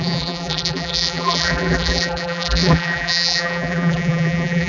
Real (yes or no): no